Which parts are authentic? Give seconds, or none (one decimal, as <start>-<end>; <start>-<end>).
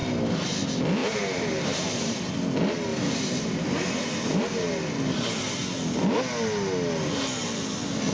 0.0-1.0; 2.3-2.9; 3.5-8.1